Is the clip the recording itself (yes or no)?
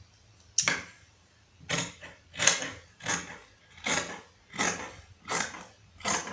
yes